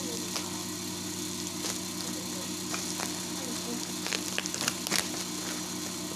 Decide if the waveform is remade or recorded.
recorded